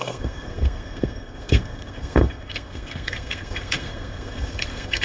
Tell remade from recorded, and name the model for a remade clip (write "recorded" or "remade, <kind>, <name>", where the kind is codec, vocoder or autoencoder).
remade, codec, SNAC